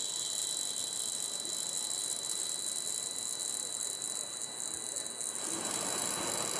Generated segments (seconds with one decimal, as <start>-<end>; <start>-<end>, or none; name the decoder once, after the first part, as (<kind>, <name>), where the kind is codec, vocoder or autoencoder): none

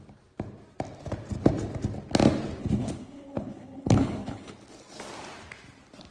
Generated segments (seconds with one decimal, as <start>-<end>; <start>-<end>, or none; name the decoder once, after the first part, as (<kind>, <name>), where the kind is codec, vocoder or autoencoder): 2.6-4.5 (codec, HILCodec)